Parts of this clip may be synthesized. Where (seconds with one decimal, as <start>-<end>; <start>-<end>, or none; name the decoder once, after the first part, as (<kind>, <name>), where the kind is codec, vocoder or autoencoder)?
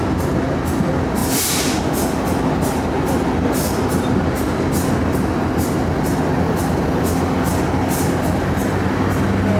1.2-1.9 (vocoder, BigVGAN v2)